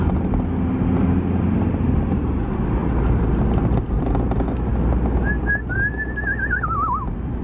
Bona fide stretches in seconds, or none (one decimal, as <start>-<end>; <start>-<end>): 0.0-7.4